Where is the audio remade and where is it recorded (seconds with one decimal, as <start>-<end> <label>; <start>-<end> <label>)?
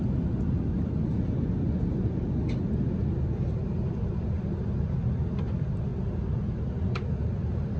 0.0-7.8 recorded